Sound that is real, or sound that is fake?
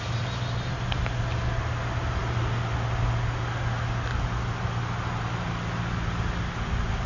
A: real